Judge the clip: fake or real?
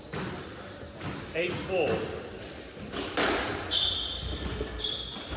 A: real